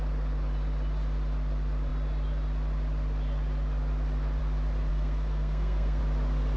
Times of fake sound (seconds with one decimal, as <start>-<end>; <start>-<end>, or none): 4.9-6.0